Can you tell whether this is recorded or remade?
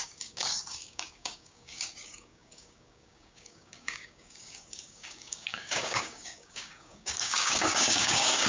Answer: remade